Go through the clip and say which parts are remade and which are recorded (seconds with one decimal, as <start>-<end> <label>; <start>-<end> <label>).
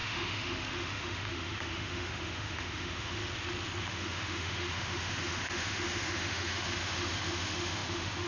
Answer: 0.0-3.2 remade; 3.2-3.8 recorded; 3.8-8.3 remade